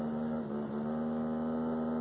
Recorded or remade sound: recorded